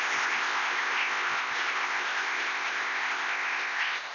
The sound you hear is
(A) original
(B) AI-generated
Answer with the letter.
B